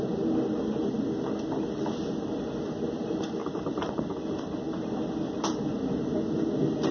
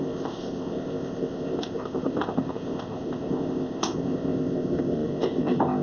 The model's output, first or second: second